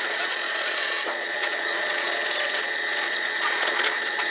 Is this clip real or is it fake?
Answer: fake